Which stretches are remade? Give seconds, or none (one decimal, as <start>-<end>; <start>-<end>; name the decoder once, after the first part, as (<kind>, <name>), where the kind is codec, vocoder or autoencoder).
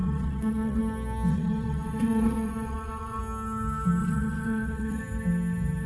0.0-0.8 (vocoder, WaveNeXt); 1.3-3.2; 4.0-5.0